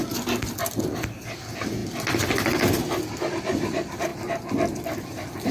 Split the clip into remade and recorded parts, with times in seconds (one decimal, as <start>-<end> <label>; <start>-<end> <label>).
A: 0.0-5.5 recorded